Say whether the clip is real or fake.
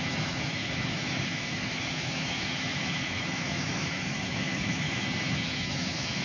fake